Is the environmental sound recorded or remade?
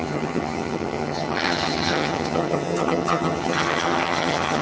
remade